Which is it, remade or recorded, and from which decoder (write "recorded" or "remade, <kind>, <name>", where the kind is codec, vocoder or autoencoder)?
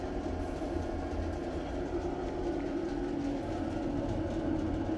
recorded